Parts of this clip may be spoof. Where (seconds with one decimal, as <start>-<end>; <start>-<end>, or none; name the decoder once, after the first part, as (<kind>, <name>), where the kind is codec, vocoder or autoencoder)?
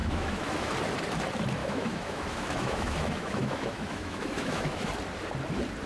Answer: 0.0-0.7 (autoencoder, DAC-VAE); 1.6-4.9